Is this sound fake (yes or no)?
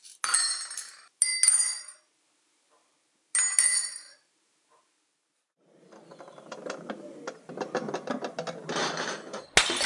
no